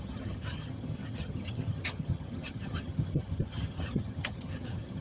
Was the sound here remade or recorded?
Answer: remade